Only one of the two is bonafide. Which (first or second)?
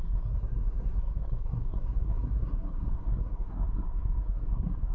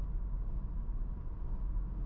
second